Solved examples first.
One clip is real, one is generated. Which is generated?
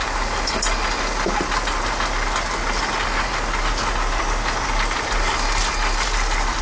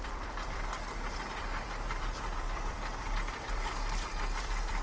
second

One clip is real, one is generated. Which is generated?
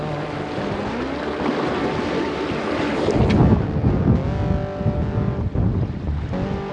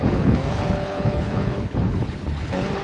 second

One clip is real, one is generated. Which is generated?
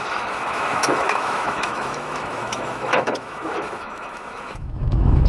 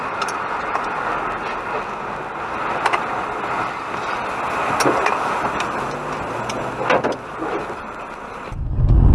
first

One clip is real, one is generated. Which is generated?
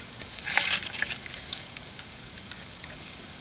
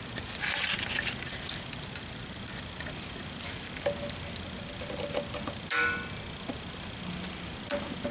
first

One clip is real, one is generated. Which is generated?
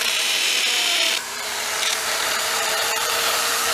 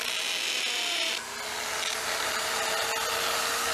first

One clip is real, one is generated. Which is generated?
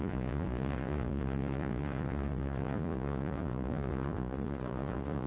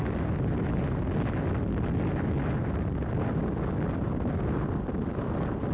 first